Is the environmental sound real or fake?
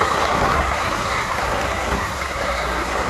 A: fake